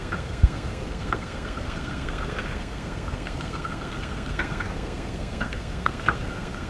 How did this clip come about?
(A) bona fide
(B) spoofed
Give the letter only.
B